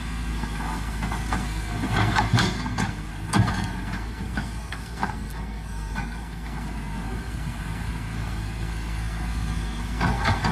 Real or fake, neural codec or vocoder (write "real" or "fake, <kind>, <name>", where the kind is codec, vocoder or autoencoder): fake, codec, SNAC